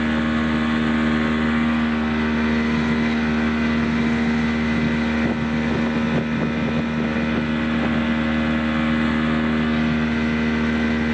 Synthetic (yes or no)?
no